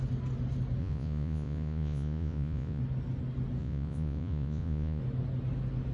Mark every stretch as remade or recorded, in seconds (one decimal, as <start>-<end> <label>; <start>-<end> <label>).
0.0-0.8 recorded; 0.8-2.8 remade; 2.8-3.6 recorded; 3.6-5.0 remade; 5.0-5.9 recorded